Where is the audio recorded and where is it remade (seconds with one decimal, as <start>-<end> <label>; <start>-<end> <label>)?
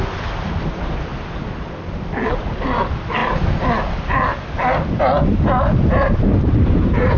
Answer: 0.0-6.3 recorded; 6.3-7.2 remade